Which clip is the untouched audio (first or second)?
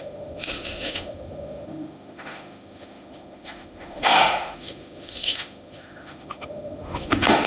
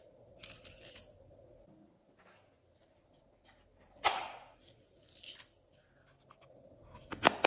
second